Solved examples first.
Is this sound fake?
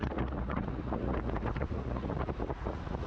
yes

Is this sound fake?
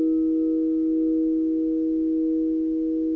no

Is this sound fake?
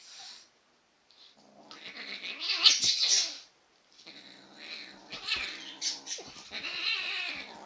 no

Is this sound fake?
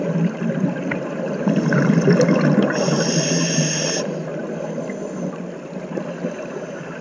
no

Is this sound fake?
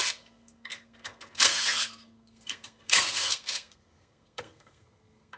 yes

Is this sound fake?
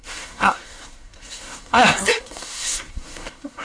yes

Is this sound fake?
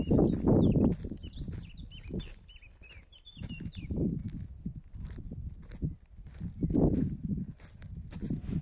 no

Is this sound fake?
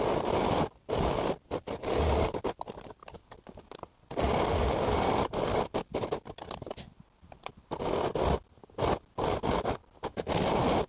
no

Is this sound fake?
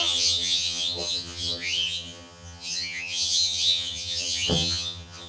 yes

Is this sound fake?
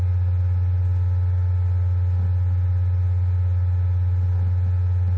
no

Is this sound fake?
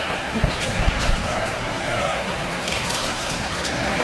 yes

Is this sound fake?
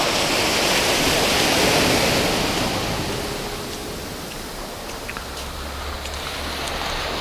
no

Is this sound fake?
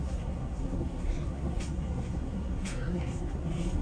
yes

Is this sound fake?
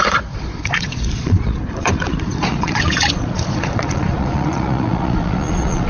yes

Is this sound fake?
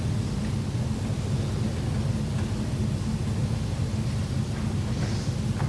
no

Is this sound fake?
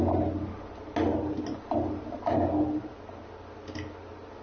no